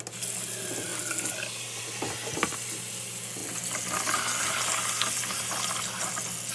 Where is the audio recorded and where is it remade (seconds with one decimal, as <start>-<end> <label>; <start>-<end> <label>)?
0.0-6.5 recorded